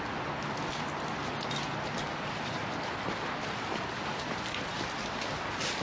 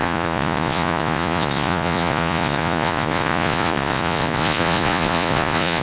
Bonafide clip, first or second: first